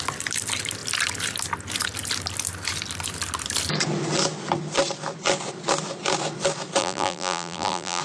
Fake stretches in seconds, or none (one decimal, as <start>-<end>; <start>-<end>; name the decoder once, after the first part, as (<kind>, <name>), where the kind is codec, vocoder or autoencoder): 6.8-8.0 (vocoder, BigVGAN v2)